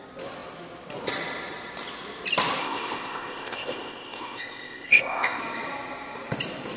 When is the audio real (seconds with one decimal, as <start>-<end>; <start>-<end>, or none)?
0.0-2.6; 5.4-6.8